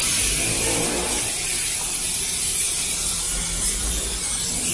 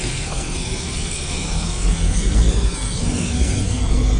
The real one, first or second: first